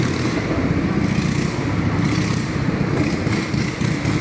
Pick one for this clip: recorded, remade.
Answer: recorded